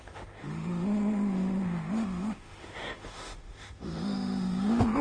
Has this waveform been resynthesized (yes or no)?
yes